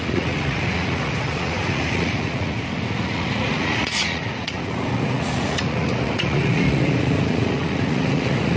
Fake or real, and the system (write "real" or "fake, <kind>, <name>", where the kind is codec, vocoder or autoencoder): fake, vocoder, Vocos